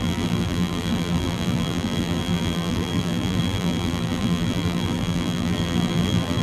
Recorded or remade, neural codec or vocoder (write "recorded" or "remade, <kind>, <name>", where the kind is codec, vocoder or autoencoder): remade, vocoder, BigVGAN v2